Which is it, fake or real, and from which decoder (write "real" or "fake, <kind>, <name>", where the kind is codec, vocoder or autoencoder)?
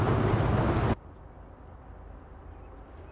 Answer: real